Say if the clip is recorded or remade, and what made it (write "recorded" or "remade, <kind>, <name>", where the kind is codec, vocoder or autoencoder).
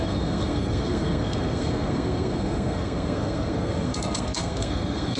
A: remade, codec, SNAC